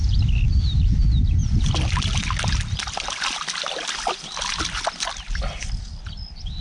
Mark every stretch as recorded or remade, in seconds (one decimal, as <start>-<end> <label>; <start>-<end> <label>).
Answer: 0.0-6.6 recorded